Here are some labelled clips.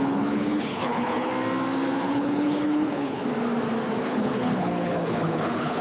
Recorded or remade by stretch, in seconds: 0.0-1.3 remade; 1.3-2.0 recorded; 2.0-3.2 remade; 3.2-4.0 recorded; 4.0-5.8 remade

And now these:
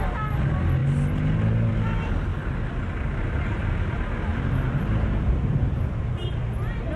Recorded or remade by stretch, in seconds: 0.0-4.3 recorded; 4.3-6.0 remade; 6.0-7.0 recorded